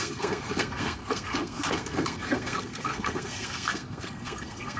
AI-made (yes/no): yes